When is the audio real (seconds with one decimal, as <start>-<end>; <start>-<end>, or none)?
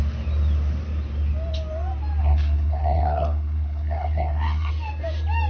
0.0-2.2; 4.7-5.5